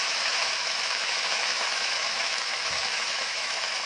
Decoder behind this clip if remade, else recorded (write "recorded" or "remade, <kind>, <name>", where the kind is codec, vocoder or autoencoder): remade, autoencoder, DAC-VAE